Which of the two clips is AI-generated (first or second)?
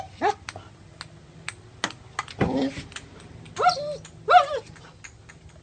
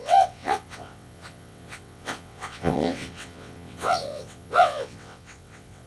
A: second